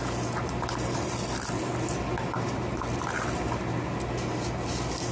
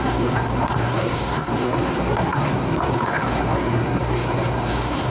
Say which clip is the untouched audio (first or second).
first